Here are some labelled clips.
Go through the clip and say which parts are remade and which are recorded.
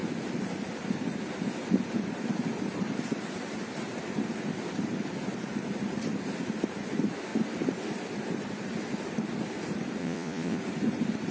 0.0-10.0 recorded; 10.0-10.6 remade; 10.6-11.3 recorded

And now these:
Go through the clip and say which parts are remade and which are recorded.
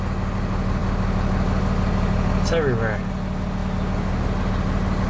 0.0-5.1 recorded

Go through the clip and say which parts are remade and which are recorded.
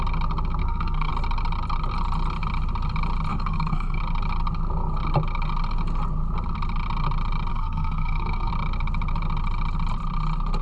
0.0-0.6 recorded; 0.6-1.1 remade; 1.1-3.3 recorded; 3.3-4.0 remade; 4.0-7.5 recorded; 7.5-8.5 remade; 8.5-10.6 recorded